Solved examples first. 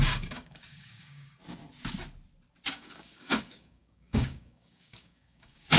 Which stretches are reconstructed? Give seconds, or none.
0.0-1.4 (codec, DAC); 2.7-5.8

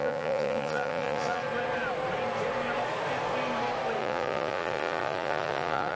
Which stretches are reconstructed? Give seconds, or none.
0.0-1.4 (vocoder, Vocos); 4.0-5.9

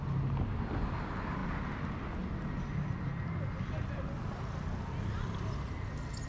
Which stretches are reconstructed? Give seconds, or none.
none

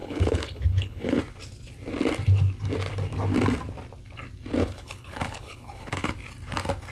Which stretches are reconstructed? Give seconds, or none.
0.0-1.2 (codec, HILCodec); 4.6-6.1